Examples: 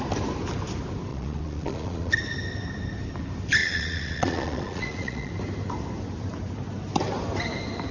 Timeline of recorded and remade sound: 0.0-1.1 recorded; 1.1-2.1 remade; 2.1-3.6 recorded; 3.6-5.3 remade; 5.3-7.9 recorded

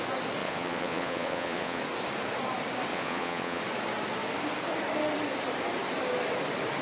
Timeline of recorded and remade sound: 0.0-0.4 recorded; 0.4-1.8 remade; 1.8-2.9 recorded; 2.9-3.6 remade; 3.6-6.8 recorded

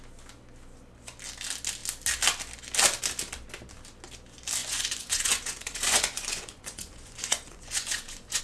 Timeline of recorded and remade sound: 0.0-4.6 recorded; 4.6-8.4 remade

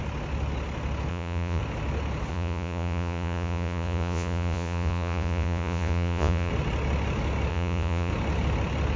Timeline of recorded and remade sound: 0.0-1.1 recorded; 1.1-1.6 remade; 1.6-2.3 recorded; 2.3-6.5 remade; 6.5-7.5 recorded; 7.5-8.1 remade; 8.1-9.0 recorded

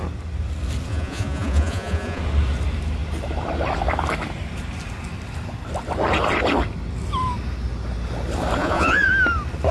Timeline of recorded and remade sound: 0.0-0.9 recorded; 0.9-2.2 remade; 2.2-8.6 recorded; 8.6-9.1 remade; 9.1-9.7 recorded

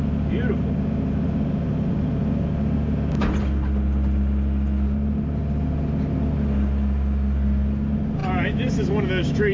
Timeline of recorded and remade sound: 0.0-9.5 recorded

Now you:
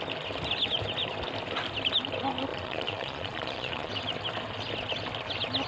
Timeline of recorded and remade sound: 0.0-2.5 recorded; 2.5-3.9 remade; 3.9-5.7 recorded

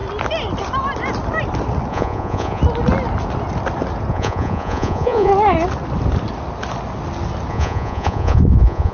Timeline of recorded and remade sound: 0.0-1.9 recorded; 1.9-2.6 remade; 2.6-4.1 recorded; 4.1-5.3 remade; 5.3-7.5 recorded; 7.5-8.9 remade